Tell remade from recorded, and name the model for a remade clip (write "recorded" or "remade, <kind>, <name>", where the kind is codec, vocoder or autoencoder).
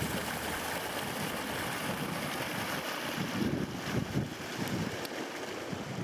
recorded